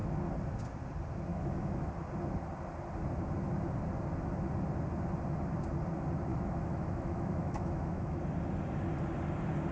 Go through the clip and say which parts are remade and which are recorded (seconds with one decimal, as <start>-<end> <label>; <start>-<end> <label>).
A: 0.0-1.3 recorded; 1.3-1.9 remade; 1.9-6.3 recorded; 6.3-8.2 remade; 8.2-9.7 recorded